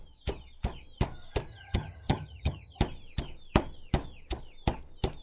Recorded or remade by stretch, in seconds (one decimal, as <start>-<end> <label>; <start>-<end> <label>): 0.0-1.5 recorded; 1.5-2.8 remade; 2.8-5.2 recorded